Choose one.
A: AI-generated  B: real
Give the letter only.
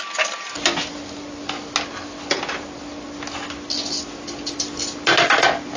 B